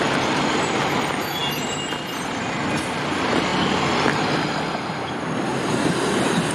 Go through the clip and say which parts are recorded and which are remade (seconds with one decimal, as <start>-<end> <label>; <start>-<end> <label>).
0.0-6.5 recorded

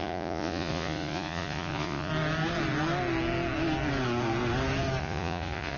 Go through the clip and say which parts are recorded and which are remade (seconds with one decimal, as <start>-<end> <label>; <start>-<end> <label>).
0.0-2.1 remade; 2.1-5.0 recorded; 5.0-5.8 remade

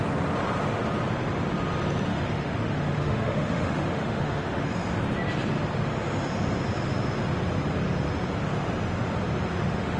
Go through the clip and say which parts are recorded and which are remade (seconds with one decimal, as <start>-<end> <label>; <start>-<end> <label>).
0.0-2.1 recorded; 2.1-4.6 remade; 4.6-9.5 recorded; 9.5-10.0 remade

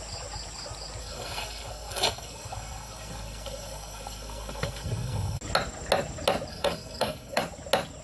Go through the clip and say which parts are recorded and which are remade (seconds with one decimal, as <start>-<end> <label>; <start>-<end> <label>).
0.0-1.0 recorded; 1.0-5.4 remade; 5.4-6.5 recorded; 6.5-7.4 remade; 7.4-8.0 recorded

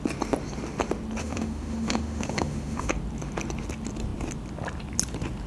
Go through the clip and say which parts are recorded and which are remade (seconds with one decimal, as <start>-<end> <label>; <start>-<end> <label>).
0.0-1.2 recorded; 1.2-2.9 remade; 2.9-5.5 recorded

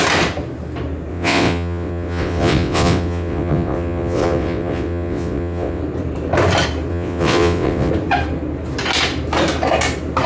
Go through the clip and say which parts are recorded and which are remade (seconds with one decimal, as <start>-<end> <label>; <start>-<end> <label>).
0.0-1.1 recorded; 1.1-5.8 remade; 5.8-6.9 recorded; 6.9-7.9 remade; 7.9-10.3 recorded

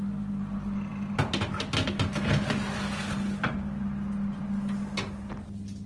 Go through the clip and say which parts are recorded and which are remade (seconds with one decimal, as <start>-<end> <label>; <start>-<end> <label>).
0.0-5.9 recorded